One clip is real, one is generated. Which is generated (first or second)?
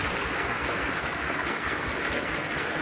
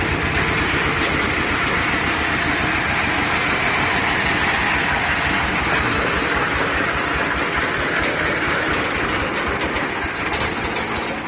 first